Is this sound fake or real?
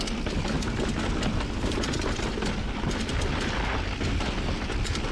real